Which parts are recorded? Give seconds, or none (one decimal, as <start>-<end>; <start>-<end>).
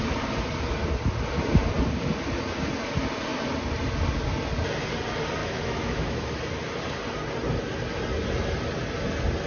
0.0-5.4; 6.3-9.5